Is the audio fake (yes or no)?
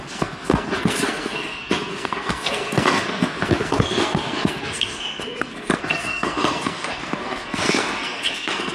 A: yes